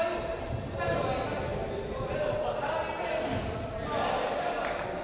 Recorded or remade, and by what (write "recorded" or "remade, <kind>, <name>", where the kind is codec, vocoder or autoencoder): recorded